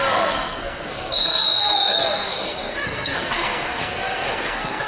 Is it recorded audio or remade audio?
remade